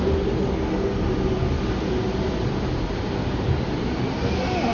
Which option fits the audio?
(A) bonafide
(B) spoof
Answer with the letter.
A